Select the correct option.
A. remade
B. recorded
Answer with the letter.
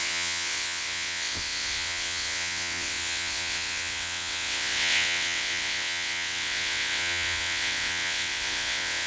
A